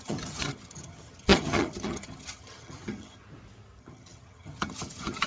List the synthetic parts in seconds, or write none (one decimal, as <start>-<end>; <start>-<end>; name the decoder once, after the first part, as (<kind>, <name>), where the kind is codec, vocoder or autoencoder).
0.0-3.2 (vocoder, HiFi-GAN); 3.8-5.3